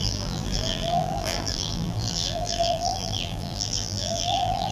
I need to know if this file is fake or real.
fake